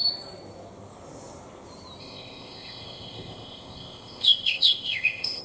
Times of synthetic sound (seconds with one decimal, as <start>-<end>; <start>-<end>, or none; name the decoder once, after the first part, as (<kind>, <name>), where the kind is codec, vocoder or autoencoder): 2.0-5.4 (codec, ZipCodec)